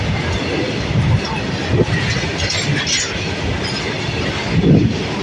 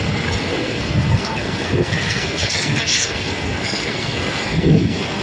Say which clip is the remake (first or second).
second